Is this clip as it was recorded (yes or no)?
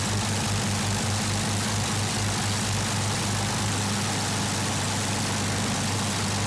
yes